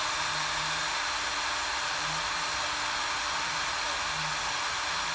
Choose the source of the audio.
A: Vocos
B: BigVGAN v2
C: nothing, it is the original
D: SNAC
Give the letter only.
C